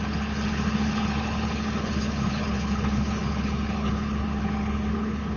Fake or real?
fake